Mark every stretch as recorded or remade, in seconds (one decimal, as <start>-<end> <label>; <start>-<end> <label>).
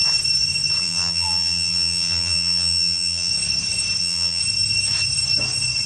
0.0-0.8 recorded; 0.8-3.3 remade; 3.3-4.0 recorded; 4.0-4.4 remade; 4.4-5.9 recorded